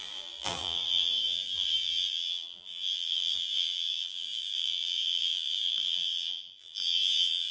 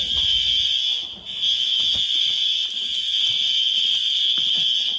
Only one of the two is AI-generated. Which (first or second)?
first